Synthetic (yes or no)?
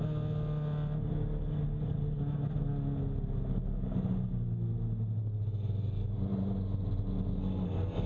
no